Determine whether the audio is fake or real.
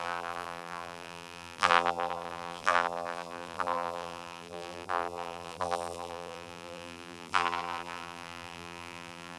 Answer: fake